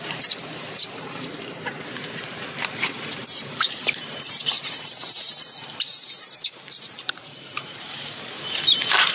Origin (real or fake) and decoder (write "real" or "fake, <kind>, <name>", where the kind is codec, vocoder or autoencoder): fake, vocoder, BigVGAN v2